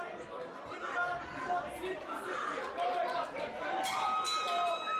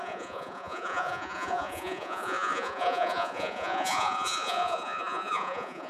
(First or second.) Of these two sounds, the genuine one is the first